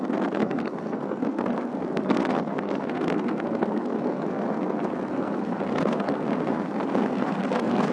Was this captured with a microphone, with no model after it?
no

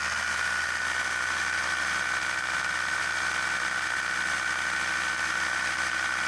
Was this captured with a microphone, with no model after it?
yes